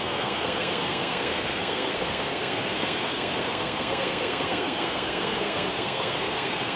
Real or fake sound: fake